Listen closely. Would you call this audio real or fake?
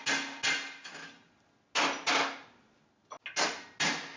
real